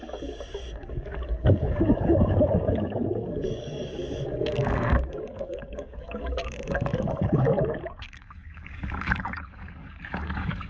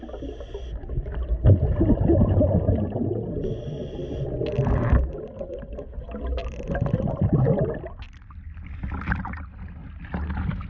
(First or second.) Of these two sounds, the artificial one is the first